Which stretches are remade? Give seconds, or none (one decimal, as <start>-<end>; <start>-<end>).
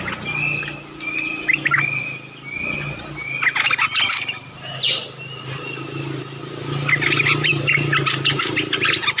none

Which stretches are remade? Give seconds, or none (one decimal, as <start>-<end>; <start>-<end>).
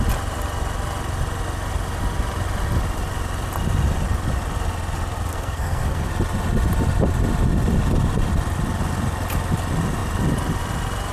5.3-6.1